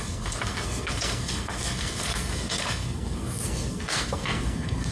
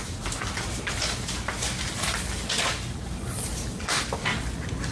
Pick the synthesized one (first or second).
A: first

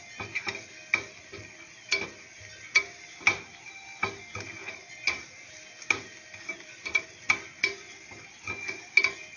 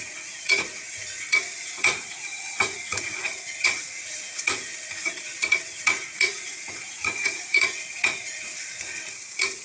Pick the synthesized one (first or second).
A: second